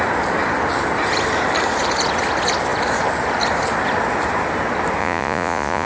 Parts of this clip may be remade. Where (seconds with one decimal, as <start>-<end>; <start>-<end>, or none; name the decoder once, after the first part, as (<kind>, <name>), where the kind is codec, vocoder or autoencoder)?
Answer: 5.0-5.9 (vocoder, Vocos)